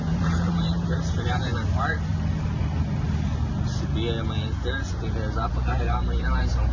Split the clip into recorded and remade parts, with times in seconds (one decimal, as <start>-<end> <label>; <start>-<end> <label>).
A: 0.0-1.5 remade; 1.5-5.5 recorded; 5.5-6.7 remade